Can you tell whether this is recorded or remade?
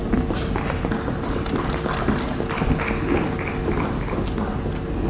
recorded